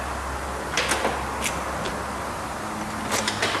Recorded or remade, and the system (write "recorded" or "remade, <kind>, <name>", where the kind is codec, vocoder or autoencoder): recorded